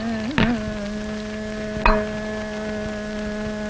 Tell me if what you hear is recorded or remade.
recorded